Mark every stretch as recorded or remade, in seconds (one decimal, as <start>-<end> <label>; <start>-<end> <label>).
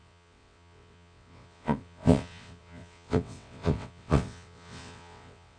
0.0-5.6 remade